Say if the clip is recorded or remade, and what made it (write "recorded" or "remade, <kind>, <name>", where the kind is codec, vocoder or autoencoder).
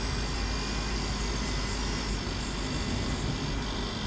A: recorded